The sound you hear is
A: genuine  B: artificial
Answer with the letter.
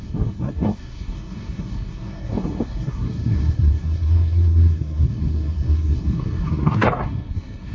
B